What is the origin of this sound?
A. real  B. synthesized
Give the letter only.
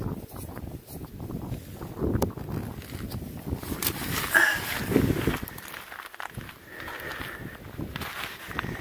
A